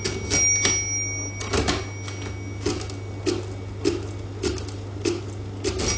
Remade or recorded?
recorded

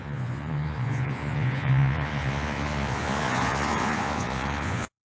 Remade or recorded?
remade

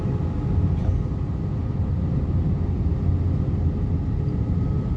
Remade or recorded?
recorded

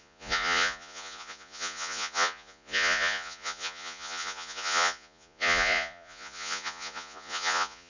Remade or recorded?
remade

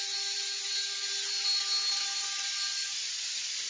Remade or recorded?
recorded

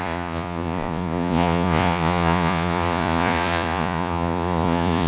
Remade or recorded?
remade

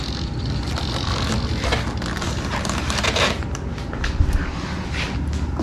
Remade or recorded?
recorded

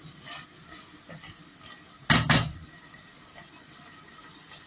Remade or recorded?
recorded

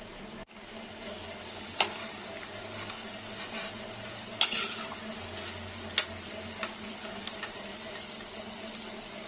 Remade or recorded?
recorded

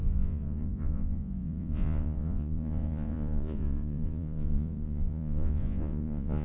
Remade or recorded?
remade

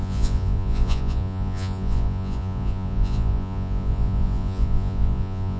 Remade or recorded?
remade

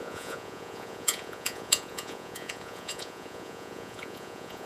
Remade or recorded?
remade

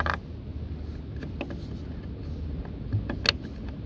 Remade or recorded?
recorded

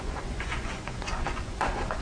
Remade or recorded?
remade